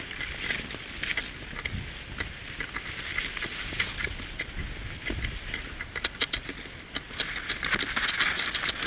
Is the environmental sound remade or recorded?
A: recorded